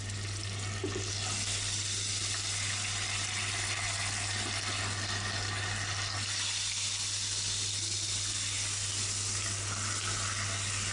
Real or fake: real